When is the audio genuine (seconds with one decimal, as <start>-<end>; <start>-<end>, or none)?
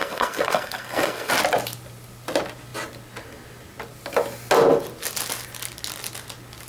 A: 1.3-6.7